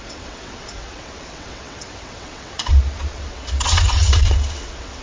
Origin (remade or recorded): remade